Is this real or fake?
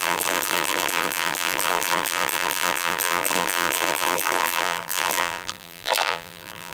fake